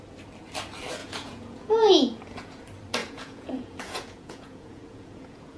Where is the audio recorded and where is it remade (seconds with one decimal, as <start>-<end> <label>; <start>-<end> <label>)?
0.0-1.0 recorded; 1.0-2.6 remade; 2.6-3.0 recorded; 3.0-5.6 remade